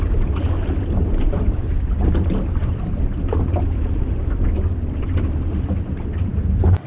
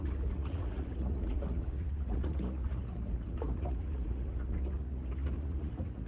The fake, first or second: second